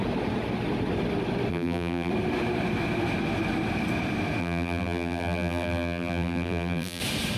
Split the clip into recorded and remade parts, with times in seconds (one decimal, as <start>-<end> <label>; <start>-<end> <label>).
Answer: 0.0-1.5 recorded; 1.5-2.1 remade; 2.1-4.4 recorded; 4.4-7.0 remade; 7.0-7.4 recorded